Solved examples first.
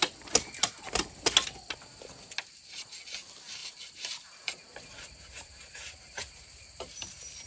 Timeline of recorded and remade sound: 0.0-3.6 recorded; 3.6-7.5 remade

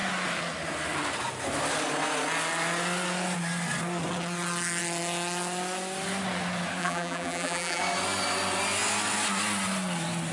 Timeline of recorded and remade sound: 0.0-6.8 recorded; 6.8-7.8 remade; 7.8-10.3 recorded

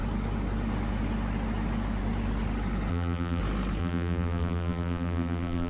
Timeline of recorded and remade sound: 0.0-2.9 recorded; 2.9-3.4 remade; 3.4-3.8 recorded; 3.8-5.7 remade

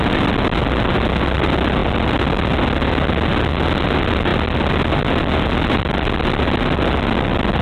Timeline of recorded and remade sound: 0.0-7.6 recorded

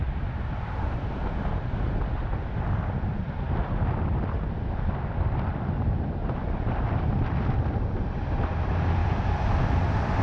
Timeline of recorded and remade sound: 0.0-6.2 recorded; 6.2-7.8 remade; 7.8-9.0 recorded; 9.0-10.2 remade

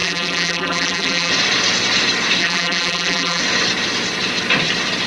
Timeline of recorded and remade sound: 0.0-1.3 remade; 1.3-2.4 recorded; 2.4-3.4 remade; 3.4-5.1 recorded

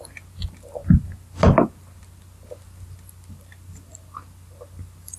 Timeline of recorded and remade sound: 0.0-5.2 recorded